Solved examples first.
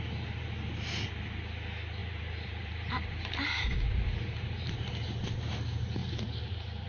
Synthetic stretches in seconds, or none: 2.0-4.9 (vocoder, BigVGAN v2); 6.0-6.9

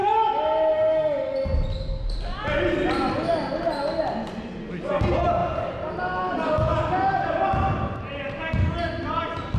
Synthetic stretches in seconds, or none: none

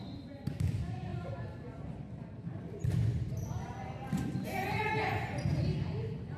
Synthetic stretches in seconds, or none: 1.1-4.9 (vocoder, BigVGAN v2)